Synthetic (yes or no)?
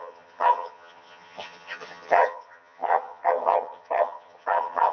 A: yes